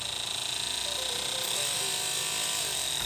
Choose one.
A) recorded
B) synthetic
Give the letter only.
A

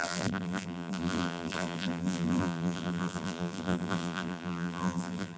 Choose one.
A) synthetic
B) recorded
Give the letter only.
A